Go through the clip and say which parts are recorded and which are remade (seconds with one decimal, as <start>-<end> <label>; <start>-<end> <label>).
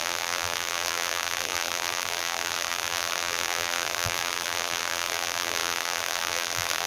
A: 0.0-6.9 remade